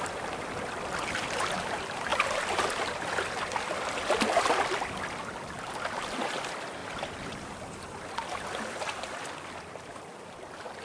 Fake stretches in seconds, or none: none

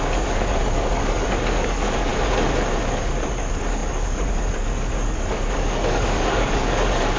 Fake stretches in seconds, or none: 0.0-2.1 (codec, DAC); 2.9-7.2

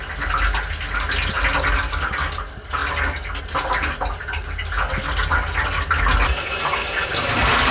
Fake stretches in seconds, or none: none